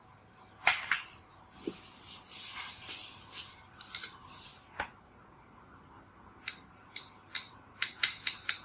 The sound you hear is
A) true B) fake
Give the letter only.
A